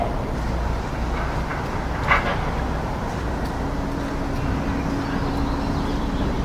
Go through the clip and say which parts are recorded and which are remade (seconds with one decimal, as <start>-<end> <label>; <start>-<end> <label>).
0.0-6.4 recorded